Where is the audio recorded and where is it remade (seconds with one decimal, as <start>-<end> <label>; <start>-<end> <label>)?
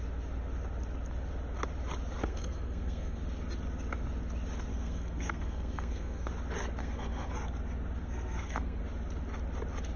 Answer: 0.0-2.2 recorded; 2.2-3.2 remade; 3.2-4.7 recorded; 4.7-6.3 remade; 6.3-6.8 recorded; 6.8-7.3 remade; 7.3-8.0 recorded; 8.0-8.8 remade; 8.8-10.0 recorded